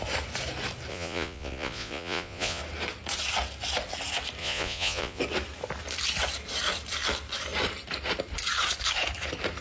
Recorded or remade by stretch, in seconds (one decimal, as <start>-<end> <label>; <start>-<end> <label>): 0.0-0.9 recorded; 0.9-2.6 remade; 2.6-4.4 recorded; 4.4-5.2 remade; 5.2-9.6 recorded